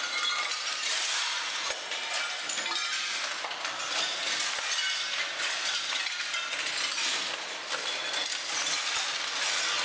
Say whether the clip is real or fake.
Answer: real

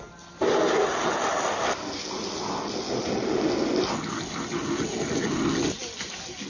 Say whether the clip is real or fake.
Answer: real